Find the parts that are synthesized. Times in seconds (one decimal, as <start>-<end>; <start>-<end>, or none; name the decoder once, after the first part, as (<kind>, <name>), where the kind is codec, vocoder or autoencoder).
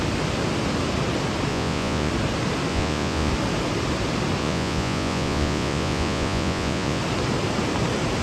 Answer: 1.5-2.1 (vocoder, Vocos); 2.7-3.3; 4.4-7.0